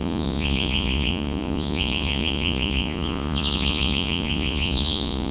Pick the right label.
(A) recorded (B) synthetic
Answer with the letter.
B